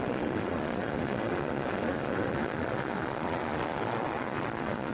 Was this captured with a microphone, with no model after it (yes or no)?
no